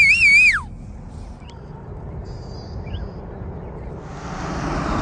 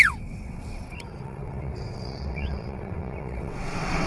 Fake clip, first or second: second